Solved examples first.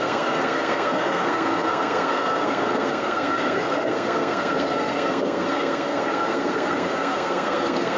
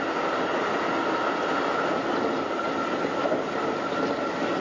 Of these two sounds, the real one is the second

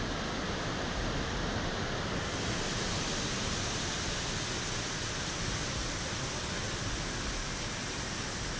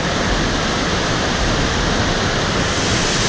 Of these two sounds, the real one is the first